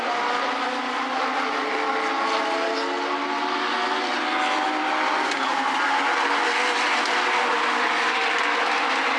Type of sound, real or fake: real